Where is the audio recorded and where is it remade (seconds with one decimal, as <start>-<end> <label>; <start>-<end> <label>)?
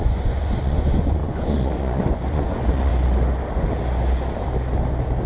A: 0.0-2.9 remade; 2.9-5.3 recorded